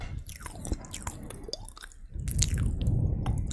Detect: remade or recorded recorded